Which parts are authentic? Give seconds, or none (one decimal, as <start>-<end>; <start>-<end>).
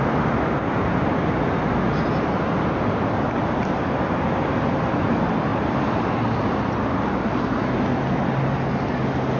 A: 0.0-9.4